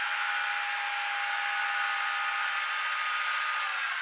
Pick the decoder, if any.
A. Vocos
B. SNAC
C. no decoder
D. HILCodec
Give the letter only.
C